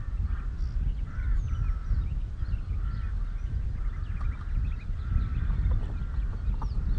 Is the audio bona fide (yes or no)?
yes